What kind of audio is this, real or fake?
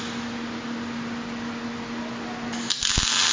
real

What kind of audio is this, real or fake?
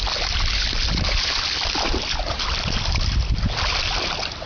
real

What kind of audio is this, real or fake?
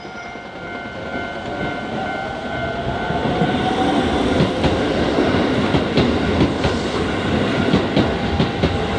real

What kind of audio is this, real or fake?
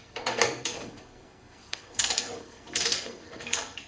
fake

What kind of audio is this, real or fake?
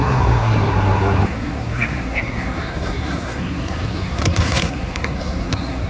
fake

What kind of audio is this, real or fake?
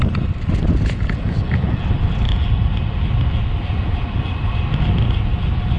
real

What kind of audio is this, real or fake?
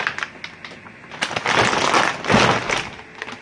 real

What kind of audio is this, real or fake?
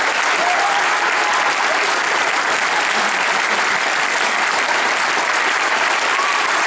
real